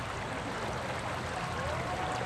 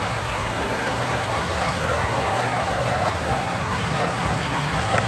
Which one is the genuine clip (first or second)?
first